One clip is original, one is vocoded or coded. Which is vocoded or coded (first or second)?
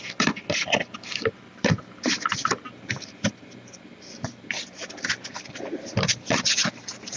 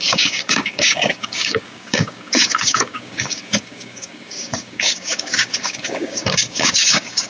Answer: second